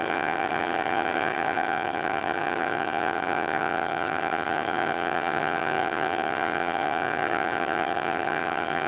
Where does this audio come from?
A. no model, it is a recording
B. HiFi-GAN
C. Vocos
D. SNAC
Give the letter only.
B